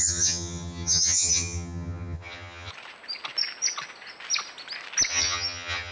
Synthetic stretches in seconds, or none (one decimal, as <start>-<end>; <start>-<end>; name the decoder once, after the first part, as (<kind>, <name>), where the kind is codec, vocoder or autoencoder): 0.0-2.7 (vocoder, HiFi-GAN); 5.1-5.9